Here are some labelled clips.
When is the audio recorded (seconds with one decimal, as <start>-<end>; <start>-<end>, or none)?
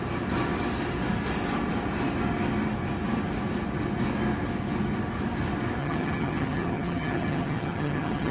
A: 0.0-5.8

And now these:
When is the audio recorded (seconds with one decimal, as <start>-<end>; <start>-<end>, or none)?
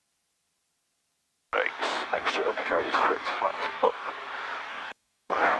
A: 0.0-1.9; 4.1-4.7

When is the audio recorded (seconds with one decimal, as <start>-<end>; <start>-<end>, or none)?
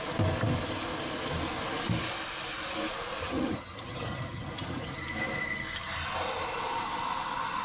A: 0.0-3.2; 4.9-7.6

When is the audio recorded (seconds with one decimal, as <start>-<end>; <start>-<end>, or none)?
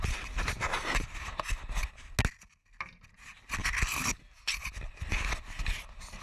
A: 0.0-6.2